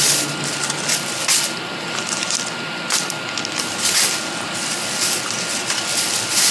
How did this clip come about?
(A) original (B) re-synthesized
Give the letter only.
A